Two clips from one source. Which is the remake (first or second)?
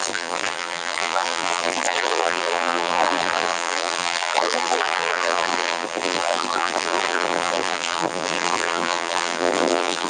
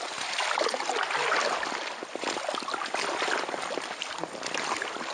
first